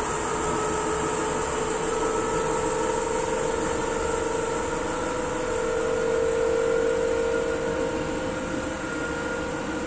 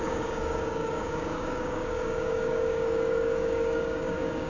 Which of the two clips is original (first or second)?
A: first